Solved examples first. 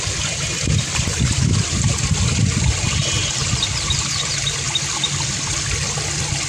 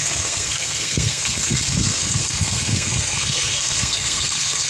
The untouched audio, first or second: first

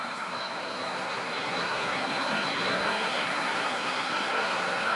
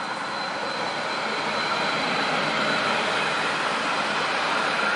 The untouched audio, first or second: second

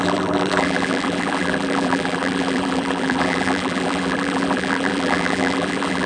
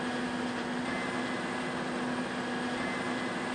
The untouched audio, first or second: second